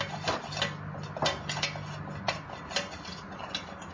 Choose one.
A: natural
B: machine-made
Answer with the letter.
A